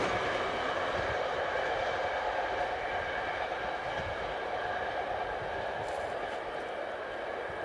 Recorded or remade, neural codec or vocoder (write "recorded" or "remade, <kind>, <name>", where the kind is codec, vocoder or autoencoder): recorded